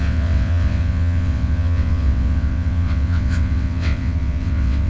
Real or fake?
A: fake